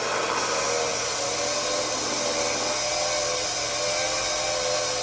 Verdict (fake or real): real